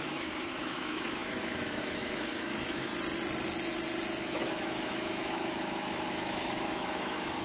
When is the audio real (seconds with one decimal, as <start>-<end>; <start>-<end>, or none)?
2.9-4.2